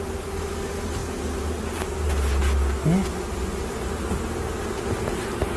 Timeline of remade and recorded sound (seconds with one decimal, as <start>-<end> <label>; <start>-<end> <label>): 0.0-5.6 recorded